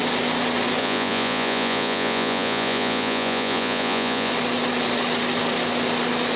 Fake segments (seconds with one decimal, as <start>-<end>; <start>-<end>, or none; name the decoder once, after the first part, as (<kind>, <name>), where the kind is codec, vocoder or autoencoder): 0.8-4.3 (vocoder, Vocos)

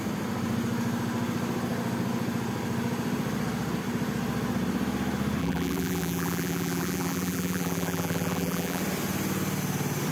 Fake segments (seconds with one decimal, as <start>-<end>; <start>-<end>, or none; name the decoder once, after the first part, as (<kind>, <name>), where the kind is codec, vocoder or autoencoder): 5.4-8.8 (vocoder, BigVGAN v2)

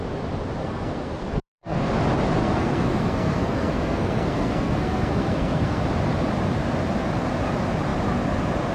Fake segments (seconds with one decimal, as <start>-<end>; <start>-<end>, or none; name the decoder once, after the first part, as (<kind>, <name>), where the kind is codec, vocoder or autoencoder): 0.6-1.9 (codec, SNAC); 2.4-5.8

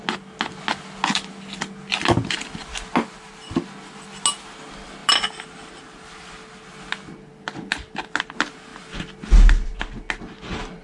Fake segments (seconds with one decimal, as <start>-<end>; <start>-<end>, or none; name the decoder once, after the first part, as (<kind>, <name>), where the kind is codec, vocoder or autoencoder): none

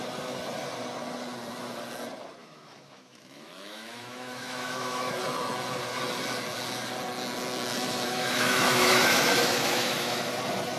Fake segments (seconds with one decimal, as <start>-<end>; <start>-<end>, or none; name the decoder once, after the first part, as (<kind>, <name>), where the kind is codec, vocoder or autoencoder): 2.4-5.1 (autoencoder, DAC-VAE); 7.7-10.3

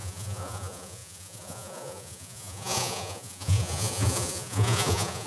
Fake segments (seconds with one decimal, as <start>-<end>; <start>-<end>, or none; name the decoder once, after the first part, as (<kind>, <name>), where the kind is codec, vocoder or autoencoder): 0.0-5.3 (vocoder, Vocos)

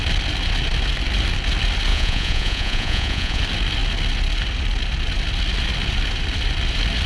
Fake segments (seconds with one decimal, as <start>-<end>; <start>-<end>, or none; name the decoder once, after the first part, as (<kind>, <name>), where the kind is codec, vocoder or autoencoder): 1.9-3.4 (vocoder, Vocos)